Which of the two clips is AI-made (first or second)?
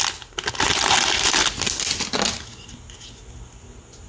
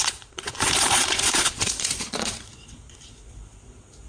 second